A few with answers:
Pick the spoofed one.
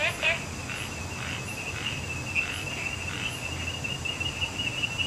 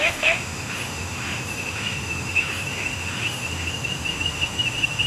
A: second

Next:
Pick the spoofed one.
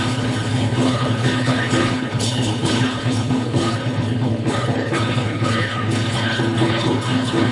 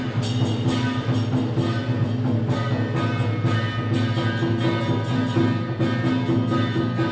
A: first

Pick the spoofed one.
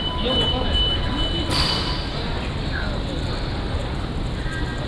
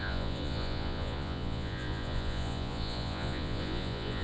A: second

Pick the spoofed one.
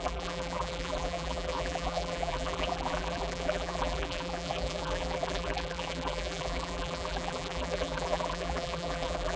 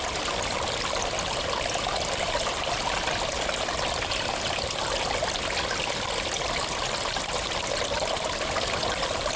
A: first